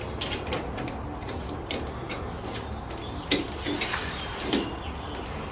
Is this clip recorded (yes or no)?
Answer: yes